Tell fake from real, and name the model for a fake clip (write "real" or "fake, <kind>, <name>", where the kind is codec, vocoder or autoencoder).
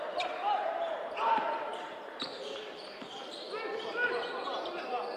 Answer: fake, vocoder, BigVGAN v2